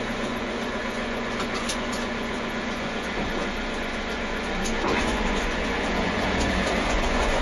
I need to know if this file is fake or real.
fake